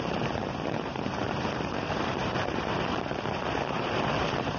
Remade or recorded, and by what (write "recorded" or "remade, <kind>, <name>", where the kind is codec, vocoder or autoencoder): remade, vocoder, BigVGAN v2